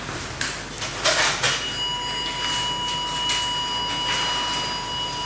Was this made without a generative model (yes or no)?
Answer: yes